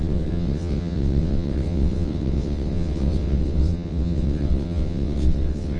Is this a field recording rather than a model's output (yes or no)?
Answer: no